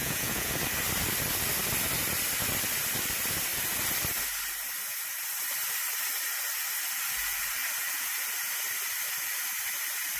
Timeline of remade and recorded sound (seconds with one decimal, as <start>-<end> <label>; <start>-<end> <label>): 0.0-0.5 remade; 0.5-10.2 recorded